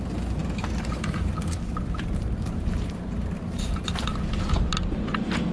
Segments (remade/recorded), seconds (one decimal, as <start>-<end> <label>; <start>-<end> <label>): 0.0-0.4 recorded; 0.4-3.7 remade; 3.7-5.5 recorded